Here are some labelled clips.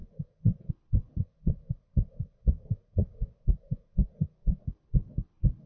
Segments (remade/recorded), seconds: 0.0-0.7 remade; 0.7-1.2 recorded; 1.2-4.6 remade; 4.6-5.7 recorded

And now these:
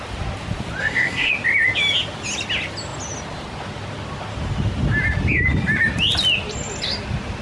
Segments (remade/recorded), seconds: 0.0-0.8 recorded; 0.8-1.3 remade; 1.3-7.4 recorded

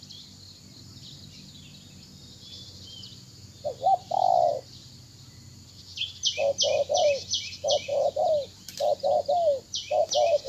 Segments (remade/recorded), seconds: 0.0-7.9 recorded; 7.9-8.6 remade; 8.6-10.5 recorded

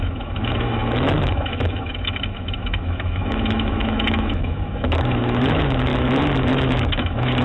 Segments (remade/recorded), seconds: 0.0-5.9 remade; 5.9-6.5 recorded; 6.5-7.4 remade

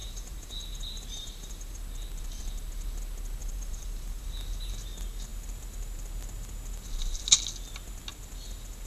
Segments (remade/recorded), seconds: 0.0-1.8 remade; 1.8-3.4 recorded; 3.4-4.2 remade; 4.2-8.9 recorded